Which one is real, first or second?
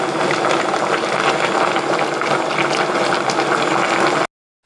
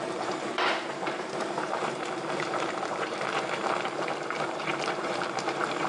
first